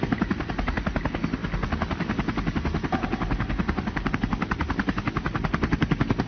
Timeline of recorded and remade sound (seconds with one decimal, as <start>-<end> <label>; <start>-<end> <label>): 0.0-6.3 recorded